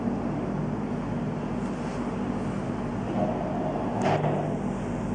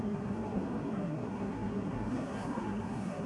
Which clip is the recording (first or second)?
first